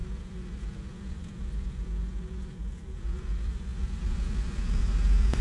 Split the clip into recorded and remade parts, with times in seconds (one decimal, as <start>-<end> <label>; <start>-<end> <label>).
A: 0.0-5.4 recorded